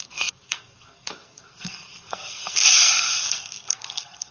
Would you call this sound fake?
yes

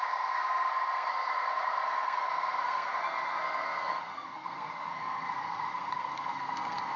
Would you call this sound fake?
yes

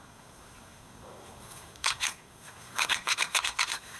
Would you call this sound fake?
yes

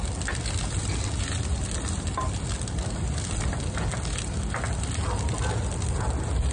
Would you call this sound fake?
no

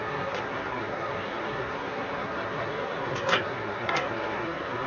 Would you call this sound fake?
yes